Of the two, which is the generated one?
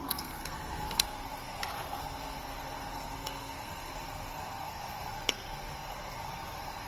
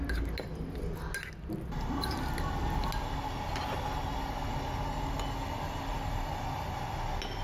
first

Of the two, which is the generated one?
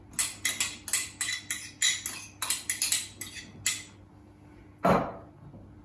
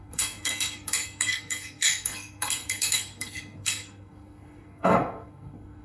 second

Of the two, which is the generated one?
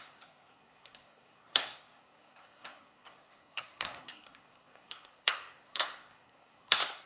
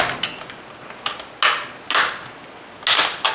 first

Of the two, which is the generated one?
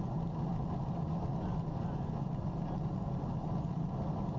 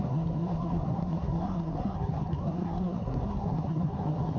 second